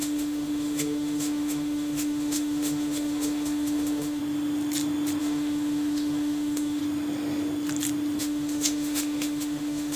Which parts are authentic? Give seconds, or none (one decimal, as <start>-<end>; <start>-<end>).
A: 4.2-5.2; 6.8-8.2